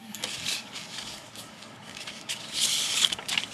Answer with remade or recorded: remade